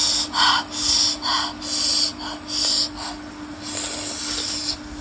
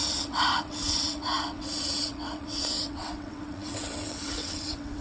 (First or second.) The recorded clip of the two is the first